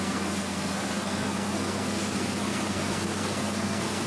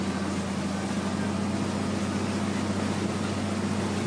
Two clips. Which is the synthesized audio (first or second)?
first